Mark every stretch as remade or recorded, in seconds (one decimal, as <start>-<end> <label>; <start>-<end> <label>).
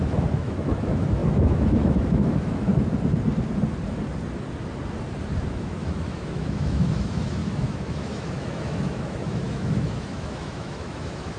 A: 0.0-2.7 remade; 2.7-5.4 recorded; 5.4-11.4 remade